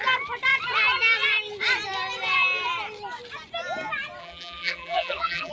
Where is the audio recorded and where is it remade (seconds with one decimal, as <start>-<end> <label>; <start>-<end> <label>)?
0.0-4.2 recorded; 4.2-5.5 remade